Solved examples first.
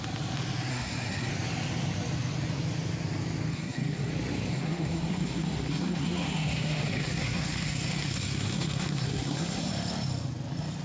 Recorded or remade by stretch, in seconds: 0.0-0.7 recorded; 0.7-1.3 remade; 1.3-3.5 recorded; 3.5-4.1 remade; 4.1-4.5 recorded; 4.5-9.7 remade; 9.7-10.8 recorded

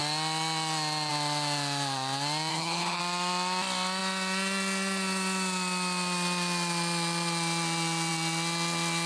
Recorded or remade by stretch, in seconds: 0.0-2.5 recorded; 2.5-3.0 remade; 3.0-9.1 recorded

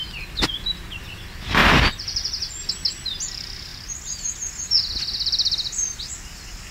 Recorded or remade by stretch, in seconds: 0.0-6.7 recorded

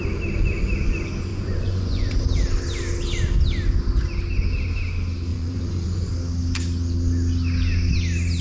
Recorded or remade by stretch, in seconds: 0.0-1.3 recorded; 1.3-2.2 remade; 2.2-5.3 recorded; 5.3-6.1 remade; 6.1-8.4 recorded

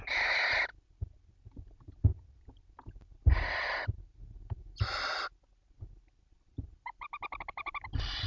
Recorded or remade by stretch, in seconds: 0.0-8.3 recorded

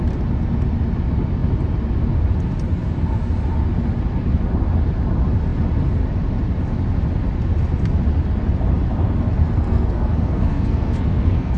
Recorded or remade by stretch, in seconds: 0.0-9.4 recorded; 9.4-11.6 remade